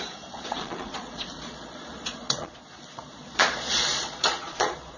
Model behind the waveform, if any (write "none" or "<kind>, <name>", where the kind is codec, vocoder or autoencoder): vocoder, Vocos